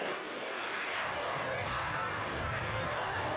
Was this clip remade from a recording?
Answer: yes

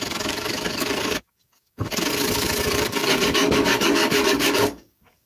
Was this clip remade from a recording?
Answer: yes